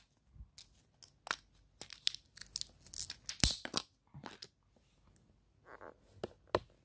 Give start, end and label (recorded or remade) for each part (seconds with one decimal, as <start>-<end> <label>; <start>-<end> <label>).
0.0-6.8 recorded